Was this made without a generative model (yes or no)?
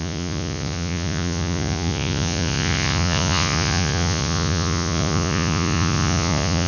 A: no